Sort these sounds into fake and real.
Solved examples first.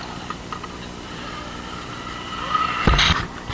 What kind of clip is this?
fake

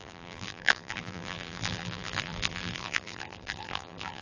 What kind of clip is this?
fake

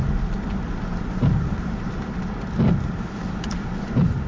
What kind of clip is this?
fake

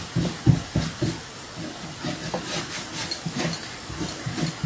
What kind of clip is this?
real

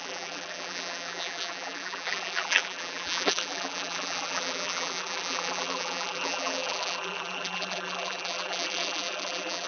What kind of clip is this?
fake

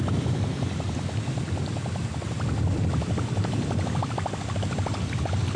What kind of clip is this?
fake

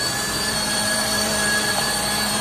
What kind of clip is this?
fake